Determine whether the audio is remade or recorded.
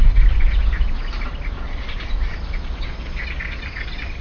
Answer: recorded